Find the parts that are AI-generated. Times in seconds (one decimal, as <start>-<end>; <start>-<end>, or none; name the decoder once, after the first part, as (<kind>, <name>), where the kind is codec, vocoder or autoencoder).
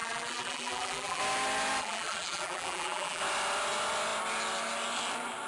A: 0.0-1.2 (vocoder, BigVGAN v2); 1.8-3.2